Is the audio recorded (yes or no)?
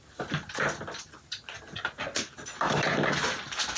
yes